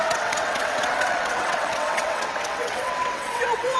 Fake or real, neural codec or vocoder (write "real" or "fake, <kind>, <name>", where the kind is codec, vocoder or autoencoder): fake, vocoder, WaveNeXt